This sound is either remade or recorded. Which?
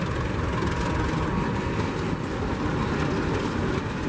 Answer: recorded